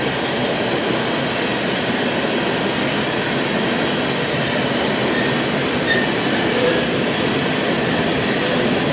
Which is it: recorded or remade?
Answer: recorded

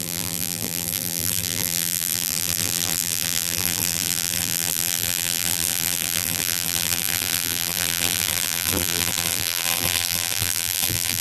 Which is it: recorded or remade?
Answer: remade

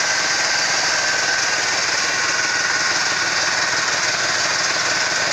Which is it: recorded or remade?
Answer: recorded